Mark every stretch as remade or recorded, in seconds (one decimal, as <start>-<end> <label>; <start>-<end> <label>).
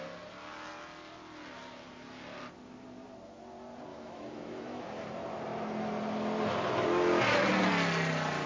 0.0-3.9 recorded; 3.9-4.8 remade; 4.8-8.5 recorded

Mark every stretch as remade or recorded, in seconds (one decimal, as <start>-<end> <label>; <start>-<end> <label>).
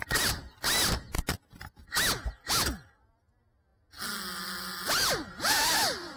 0.0-6.2 recorded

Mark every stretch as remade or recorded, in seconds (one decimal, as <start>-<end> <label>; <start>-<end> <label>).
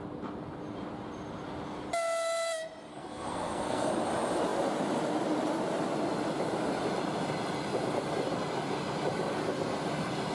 0.0-2.9 recorded; 2.9-3.9 remade; 3.9-10.3 recorded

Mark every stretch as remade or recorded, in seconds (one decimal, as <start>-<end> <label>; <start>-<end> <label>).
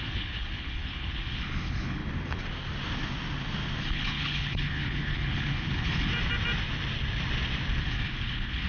0.0-2.0 remade; 2.0-3.8 recorded; 3.8-6.1 remade; 6.1-7.8 recorded; 7.8-8.7 remade